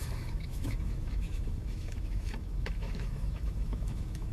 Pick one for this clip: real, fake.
fake